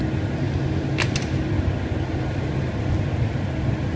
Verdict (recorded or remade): recorded